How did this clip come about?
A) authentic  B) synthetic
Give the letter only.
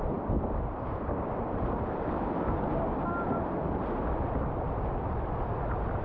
A